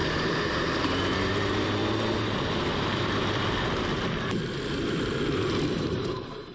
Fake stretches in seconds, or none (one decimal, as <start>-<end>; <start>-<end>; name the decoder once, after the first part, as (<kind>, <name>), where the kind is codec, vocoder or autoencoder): 0.0-1.8 (vocoder, BigVGAN v2); 5.7-6.5